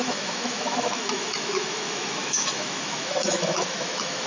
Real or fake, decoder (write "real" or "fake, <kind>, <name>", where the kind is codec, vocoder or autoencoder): fake, autoencoder, DAC-VAE